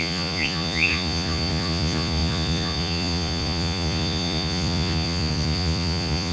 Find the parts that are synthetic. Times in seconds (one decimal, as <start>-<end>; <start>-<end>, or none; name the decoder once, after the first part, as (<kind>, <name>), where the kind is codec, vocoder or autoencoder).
0.0-6.3 (vocoder, Vocos)